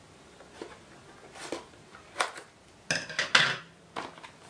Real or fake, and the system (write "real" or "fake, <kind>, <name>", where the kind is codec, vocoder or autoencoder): real